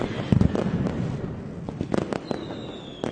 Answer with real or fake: real